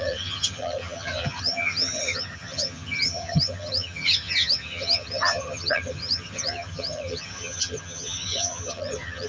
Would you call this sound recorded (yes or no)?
no